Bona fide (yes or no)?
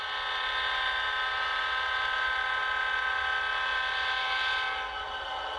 yes